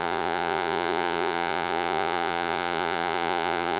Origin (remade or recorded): remade